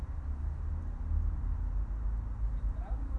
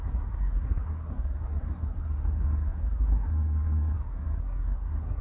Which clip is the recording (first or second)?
first